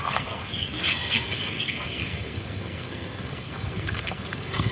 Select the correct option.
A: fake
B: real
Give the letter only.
A